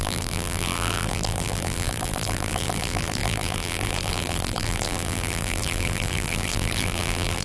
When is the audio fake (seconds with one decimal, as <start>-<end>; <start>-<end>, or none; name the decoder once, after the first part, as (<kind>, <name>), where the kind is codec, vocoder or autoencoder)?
0.0-7.4 (vocoder, BigVGAN v2)